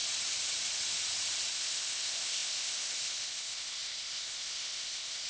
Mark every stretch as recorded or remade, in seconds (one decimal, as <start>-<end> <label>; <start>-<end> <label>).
0.0-1.5 recorded; 1.5-5.3 remade